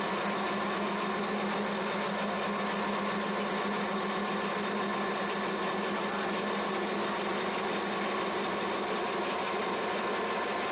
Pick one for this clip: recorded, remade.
recorded